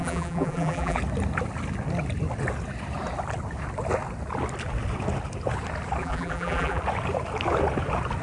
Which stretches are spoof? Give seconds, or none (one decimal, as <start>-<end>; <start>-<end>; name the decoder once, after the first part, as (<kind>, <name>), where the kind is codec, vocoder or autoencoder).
0.0-1.0 (vocoder, BigVGAN v2); 6.0-6.8